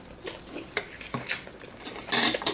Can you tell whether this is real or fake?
real